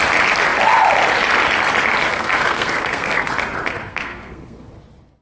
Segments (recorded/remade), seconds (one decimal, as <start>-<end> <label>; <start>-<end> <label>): 0.0-2.1 recorded; 2.1-3.3 remade; 3.3-3.9 recorded; 3.9-4.7 remade; 4.7-5.2 recorded